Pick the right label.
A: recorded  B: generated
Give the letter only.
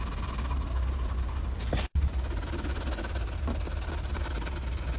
A